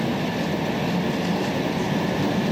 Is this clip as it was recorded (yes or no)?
yes